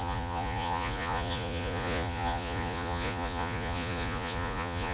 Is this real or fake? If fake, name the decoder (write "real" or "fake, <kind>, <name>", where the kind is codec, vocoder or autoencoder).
fake, vocoder, Vocos